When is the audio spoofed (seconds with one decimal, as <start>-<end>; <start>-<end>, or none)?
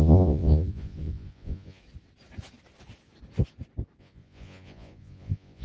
0.0-1.8; 4.0-5.6